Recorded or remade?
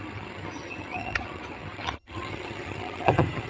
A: remade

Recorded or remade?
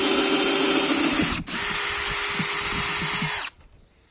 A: recorded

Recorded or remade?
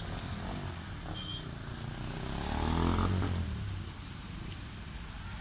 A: recorded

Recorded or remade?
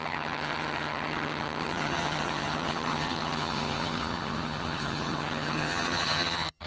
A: remade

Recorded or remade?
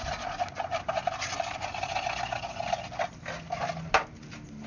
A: recorded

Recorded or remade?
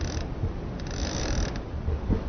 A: recorded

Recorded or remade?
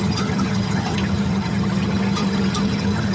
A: remade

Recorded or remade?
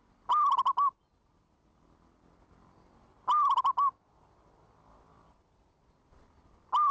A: recorded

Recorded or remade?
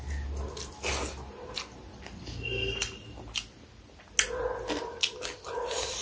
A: recorded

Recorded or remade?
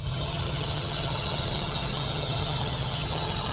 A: remade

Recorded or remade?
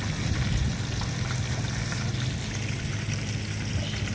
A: recorded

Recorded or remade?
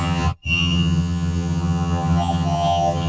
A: remade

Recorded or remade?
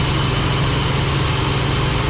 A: recorded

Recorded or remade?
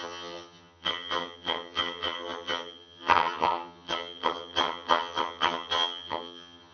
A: remade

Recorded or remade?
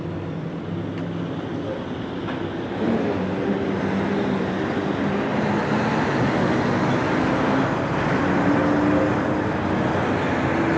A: recorded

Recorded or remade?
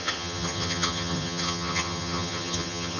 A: remade